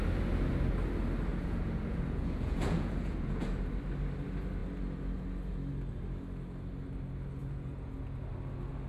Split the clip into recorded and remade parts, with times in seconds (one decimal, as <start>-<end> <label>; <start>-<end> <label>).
0.0-1.3 recorded; 1.3-3.7 remade; 3.7-7.4 recorded; 7.4-8.3 remade; 8.3-8.9 recorded